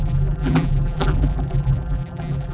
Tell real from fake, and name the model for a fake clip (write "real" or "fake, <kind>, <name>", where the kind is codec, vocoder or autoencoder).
fake, vocoder, BigVGAN v2